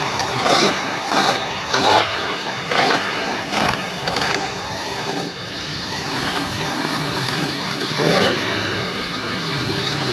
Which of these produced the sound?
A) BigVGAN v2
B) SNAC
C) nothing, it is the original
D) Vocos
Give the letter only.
B